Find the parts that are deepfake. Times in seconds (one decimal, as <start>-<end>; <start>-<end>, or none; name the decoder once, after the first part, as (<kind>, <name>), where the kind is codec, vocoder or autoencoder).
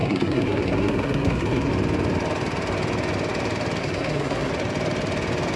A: 0.0-1.7 (codec, SNAC); 3.8-4.5